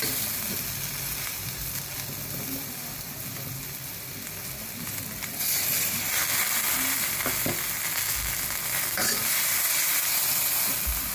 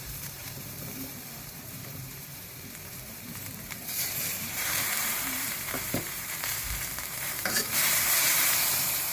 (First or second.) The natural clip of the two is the first